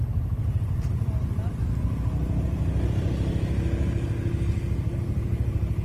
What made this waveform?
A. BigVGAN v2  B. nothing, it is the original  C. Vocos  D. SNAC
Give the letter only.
B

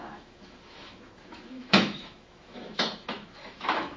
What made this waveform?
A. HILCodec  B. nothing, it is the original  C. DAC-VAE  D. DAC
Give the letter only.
C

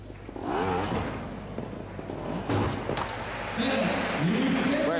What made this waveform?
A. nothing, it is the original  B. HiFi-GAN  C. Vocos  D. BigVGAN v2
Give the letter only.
A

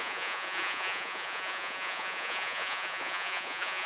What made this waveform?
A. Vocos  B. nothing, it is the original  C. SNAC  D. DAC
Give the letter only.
A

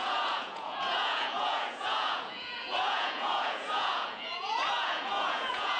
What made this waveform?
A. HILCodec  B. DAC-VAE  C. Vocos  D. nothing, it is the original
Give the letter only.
C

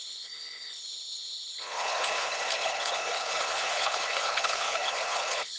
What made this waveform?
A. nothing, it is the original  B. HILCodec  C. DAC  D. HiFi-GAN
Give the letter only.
B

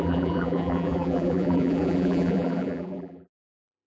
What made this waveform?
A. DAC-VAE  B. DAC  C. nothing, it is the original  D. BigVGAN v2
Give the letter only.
D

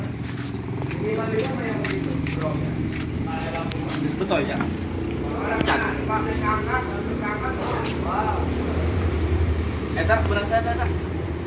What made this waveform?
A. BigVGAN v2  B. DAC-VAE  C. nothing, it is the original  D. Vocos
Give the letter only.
A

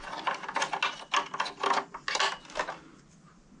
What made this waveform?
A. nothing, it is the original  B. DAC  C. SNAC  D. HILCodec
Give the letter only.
A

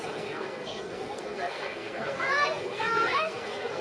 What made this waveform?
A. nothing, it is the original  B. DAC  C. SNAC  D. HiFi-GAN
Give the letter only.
C